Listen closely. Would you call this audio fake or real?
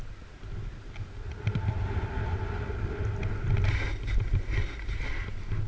real